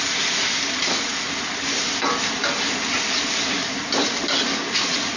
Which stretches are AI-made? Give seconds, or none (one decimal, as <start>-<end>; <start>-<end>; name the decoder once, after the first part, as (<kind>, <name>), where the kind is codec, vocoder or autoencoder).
none